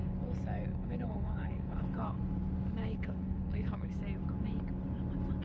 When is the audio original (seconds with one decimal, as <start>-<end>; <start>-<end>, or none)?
0.0-0.7; 2.2-2.8; 3.9-5.4